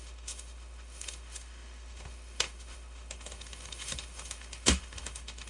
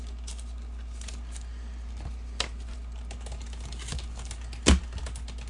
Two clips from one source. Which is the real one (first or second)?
second